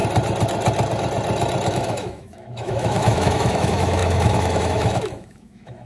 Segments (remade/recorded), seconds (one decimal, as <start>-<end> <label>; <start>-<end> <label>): 0.0-1.7 recorded; 1.7-5.9 remade